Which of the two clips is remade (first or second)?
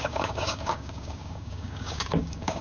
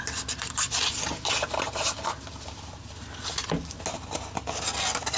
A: first